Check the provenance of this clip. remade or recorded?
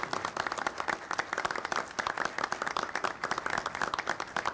recorded